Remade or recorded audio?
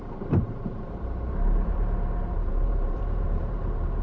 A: remade